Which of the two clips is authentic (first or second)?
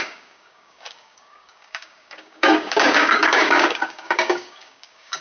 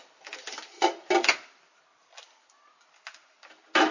second